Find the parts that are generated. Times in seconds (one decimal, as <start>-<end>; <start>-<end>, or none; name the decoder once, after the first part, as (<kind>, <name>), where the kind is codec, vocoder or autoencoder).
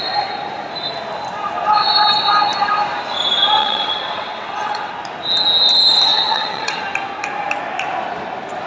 3.6-4.9 (vocoder, WaveNeXt); 6.1-6.8